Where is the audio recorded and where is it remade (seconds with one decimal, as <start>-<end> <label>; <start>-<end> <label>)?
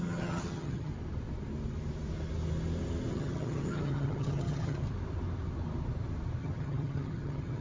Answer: 0.0-0.9 remade; 0.9-3.1 recorded; 3.1-4.8 remade; 4.8-6.4 recorded; 6.4-7.6 remade